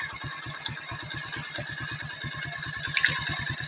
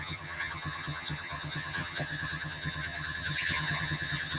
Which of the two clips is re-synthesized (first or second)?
second